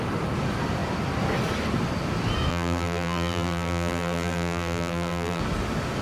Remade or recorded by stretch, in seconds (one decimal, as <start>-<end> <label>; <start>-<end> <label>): 0.0-2.5 recorded; 2.5-5.4 remade; 5.4-6.0 recorded